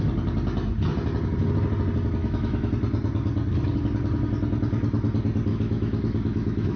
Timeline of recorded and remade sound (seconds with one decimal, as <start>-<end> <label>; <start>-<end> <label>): 0.0-2.2 recorded; 2.2-2.7 remade; 2.7-5.5 recorded; 5.5-6.8 remade